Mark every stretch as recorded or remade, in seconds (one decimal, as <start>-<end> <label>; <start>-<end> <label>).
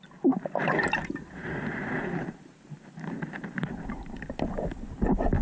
0.0-1.4 recorded; 1.4-4.2 remade; 4.2-5.4 recorded